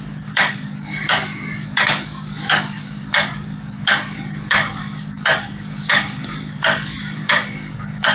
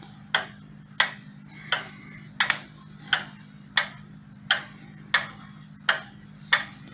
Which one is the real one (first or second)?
second